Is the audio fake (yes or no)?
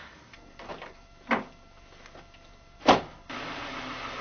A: yes